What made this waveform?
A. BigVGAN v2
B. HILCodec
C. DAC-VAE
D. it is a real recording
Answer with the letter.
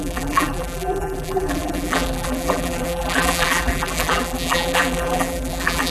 A